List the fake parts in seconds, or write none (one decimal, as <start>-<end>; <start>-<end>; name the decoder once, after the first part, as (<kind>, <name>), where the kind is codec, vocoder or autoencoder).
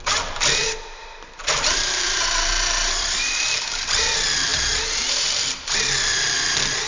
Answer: 0.0-6.9 (vocoder, BigVGAN v2)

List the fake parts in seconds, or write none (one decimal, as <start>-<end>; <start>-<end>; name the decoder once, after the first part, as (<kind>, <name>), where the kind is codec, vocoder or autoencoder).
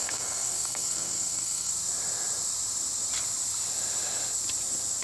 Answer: 0.0-1.7 (codec, SNAC)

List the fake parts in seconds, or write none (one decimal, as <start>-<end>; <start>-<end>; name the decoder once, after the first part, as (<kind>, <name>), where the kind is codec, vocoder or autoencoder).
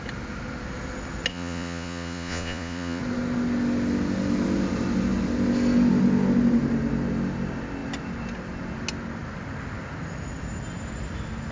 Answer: 1.3-3.0 (vocoder, Vocos)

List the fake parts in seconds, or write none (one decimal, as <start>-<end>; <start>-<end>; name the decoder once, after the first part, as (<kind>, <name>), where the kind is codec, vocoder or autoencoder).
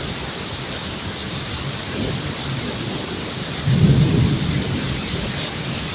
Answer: 1.2-3.8 (vocoder, BigVGAN v2)